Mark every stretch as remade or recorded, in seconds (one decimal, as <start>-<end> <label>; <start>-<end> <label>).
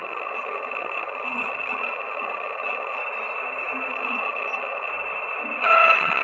0.0-3.0 remade; 3.0-3.9 recorded; 3.9-4.9 remade; 4.9-5.6 recorded; 5.6-6.2 remade